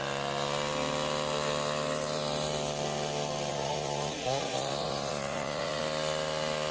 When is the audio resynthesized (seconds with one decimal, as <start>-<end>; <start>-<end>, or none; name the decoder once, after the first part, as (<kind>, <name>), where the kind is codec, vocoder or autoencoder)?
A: 3.5-5.8 (vocoder, Vocos)